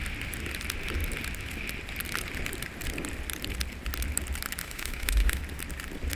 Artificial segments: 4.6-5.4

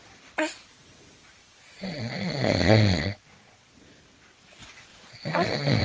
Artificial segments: 1.4-3.8; 4.9-5.8

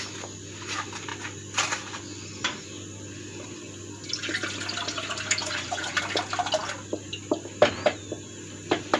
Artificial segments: 5.4-6.0